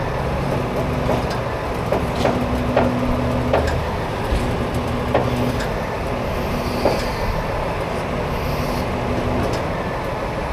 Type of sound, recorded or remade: recorded